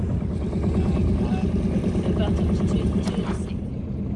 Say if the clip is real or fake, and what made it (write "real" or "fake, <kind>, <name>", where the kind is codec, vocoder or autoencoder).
real